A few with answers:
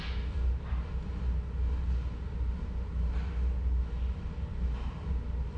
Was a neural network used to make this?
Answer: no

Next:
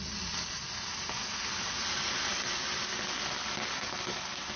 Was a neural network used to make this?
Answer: no